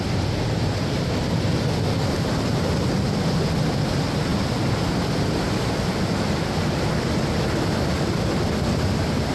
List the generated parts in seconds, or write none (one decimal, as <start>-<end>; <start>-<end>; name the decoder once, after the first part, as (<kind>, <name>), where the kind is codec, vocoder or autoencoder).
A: none